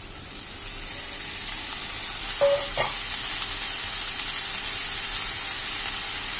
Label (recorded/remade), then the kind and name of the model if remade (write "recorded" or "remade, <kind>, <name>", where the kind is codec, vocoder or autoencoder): recorded